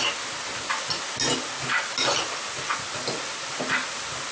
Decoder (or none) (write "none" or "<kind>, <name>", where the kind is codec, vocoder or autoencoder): none